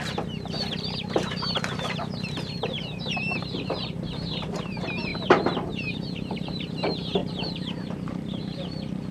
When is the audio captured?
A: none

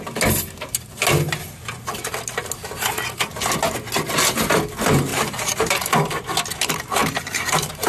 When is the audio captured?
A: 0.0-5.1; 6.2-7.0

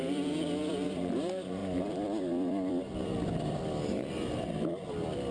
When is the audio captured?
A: none

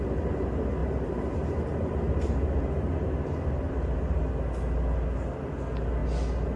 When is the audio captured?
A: 0.0-0.8; 4.3-6.6

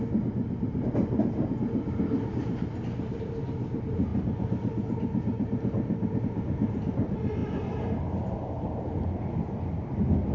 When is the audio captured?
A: 0.0-4.1; 6.2-10.3